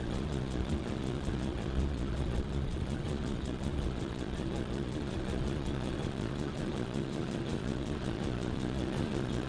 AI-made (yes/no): yes